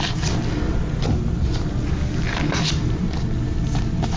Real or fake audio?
real